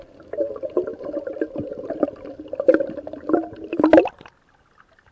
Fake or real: real